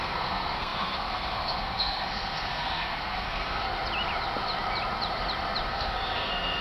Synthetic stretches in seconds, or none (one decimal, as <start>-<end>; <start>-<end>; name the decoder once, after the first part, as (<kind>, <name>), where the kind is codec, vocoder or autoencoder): 0.0-3.7 (codec, SNAC); 5.7-6.6